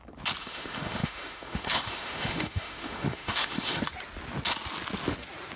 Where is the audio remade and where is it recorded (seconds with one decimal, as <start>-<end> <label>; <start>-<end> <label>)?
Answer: 0.0-0.4 recorded; 0.4-3.8 remade; 3.8-5.6 recorded